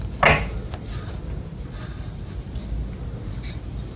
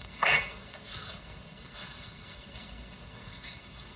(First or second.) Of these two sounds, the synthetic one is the second